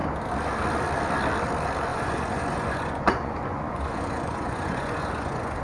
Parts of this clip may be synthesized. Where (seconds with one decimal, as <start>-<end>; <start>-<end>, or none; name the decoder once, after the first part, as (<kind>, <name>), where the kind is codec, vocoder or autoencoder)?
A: 1.9-5.6 (vocoder, Vocos)